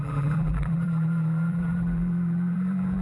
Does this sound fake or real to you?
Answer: fake